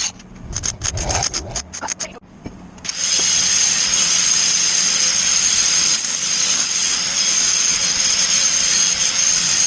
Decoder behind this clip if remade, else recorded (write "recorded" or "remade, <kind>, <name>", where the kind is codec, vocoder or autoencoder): recorded